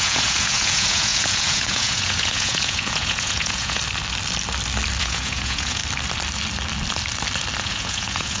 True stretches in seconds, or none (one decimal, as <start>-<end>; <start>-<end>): 3.8-5.0; 5.8-7.6